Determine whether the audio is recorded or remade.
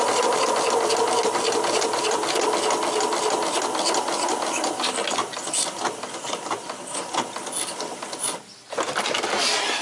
recorded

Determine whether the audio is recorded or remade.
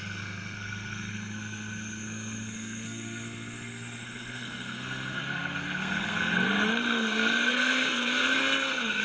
remade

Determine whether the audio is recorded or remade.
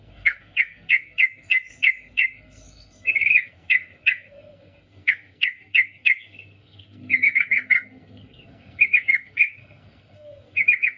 remade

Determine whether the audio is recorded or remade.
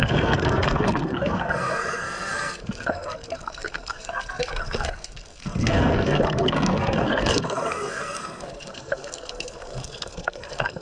remade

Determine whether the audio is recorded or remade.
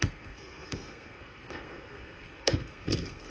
remade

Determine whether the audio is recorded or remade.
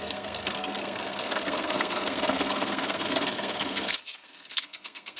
remade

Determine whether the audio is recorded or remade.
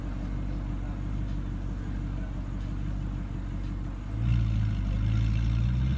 recorded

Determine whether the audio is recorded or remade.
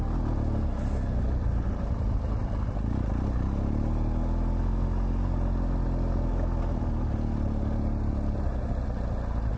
recorded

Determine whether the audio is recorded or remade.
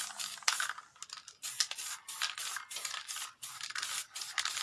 recorded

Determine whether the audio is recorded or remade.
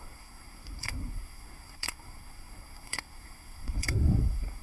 remade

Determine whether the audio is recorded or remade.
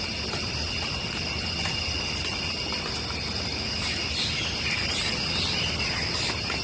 recorded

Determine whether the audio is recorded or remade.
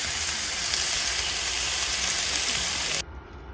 recorded